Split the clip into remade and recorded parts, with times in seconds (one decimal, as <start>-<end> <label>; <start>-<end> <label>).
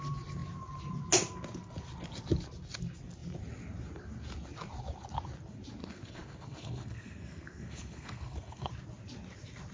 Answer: 0.0-5.8 recorded; 5.8-8.7 remade; 8.7-9.7 recorded